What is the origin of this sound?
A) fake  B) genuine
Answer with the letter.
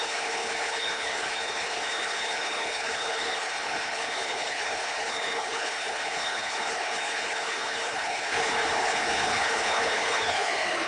A